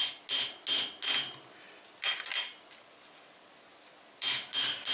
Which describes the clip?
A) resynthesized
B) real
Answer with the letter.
B